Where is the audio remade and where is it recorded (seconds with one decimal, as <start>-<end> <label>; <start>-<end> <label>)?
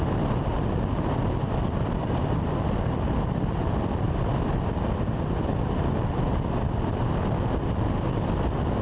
0.0-2.0 recorded; 2.0-7.2 remade; 7.2-8.8 recorded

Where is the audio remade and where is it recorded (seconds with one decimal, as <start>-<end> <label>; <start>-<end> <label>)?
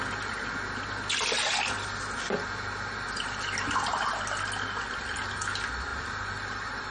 0.0-5.9 recorded; 5.9-6.9 remade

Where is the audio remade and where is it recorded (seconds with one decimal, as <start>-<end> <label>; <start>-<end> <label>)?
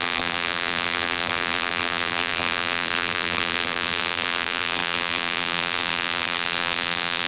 0.0-7.3 remade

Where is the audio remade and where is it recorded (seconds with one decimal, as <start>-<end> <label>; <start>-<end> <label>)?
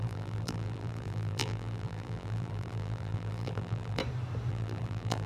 0.0-4.0 remade; 4.0-4.5 recorded; 4.5-5.3 remade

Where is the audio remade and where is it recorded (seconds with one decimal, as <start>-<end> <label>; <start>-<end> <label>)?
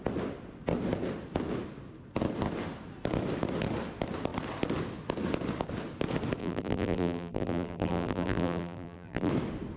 0.0-6.4 recorded; 6.4-9.3 remade; 9.3-9.8 recorded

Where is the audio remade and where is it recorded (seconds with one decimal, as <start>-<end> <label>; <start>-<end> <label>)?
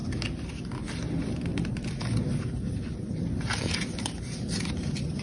0.0-1.5 recorded; 1.5-4.6 remade; 4.6-5.2 recorded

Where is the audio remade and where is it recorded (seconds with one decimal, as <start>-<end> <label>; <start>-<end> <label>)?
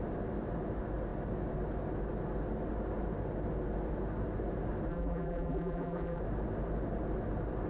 0.0-4.9 recorded; 4.9-6.2 remade; 6.2-7.7 recorded